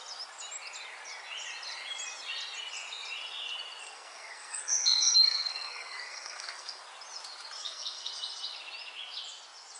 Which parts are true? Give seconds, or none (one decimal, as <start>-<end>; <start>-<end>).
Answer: 0.0-3.8; 6.8-7.6; 8.1-9.8